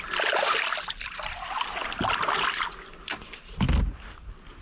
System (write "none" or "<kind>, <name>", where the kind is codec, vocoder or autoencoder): none